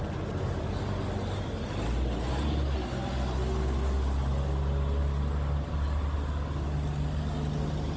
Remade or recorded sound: recorded